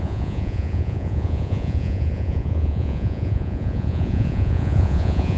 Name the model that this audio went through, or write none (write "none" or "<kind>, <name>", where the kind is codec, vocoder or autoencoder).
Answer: vocoder, Vocos